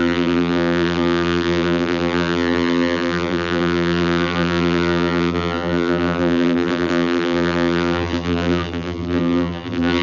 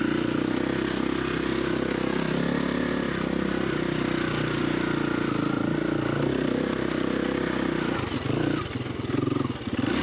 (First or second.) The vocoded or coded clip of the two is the first